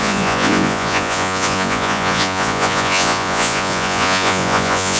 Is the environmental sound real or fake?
fake